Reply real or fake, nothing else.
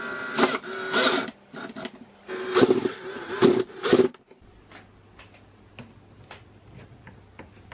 real